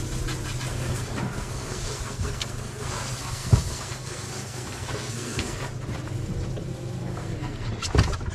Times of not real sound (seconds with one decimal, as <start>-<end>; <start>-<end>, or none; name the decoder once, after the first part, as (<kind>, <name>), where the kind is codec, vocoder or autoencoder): 0.7-5.7 (codec, SNAC); 7.0-7.7